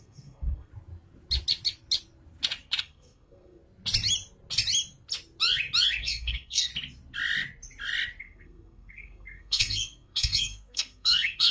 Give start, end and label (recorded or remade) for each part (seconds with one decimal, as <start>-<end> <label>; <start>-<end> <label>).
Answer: 0.0-0.7 remade; 0.7-2.8 recorded; 2.8-3.6 remade; 3.6-6.0 recorded; 6.0-6.7 remade; 6.7-8.2 recorded; 8.2-11.5 remade